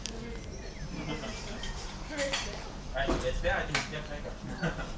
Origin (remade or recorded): recorded